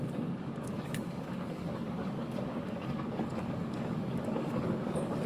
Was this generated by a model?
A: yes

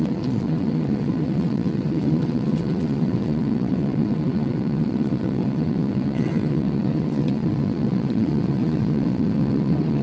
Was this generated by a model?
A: yes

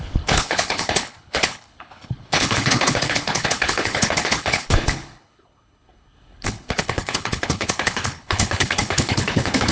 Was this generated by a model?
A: yes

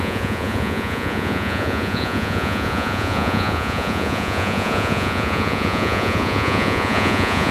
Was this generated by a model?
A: yes